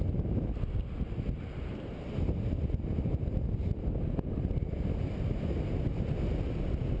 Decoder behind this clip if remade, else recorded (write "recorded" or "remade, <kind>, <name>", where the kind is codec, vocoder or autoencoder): recorded